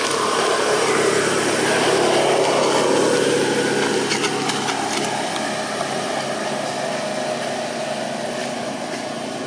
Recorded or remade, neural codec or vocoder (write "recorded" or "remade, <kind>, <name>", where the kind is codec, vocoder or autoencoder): recorded